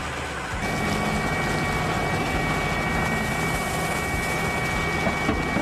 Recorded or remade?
recorded